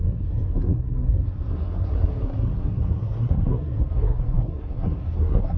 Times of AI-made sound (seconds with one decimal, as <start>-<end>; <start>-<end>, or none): 0.0-5.6